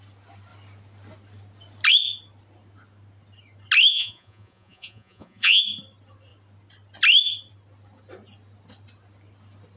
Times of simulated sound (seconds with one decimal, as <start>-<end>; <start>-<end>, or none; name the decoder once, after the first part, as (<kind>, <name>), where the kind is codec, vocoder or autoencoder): 3.9-5.6 (vocoder, Vocos)

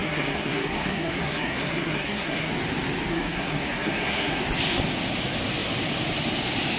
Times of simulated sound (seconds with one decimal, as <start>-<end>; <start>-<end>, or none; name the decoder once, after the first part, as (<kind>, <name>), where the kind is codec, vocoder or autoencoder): 0.0-2.5 (codec, SNAC); 3.1-4.4

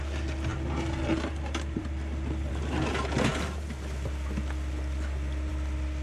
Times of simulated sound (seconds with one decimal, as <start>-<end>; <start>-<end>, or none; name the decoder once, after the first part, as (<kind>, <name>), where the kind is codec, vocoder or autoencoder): 0.5-2.5 (vocoder, BigVGAN v2)